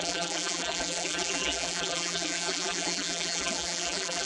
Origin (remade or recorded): remade